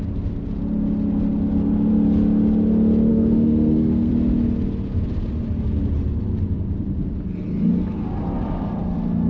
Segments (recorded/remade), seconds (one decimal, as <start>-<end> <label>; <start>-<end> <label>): 0.0-3.1 recorded; 3.1-4.1 remade; 4.1-9.3 recorded